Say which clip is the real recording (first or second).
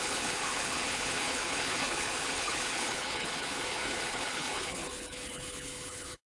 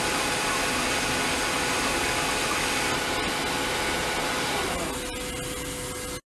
second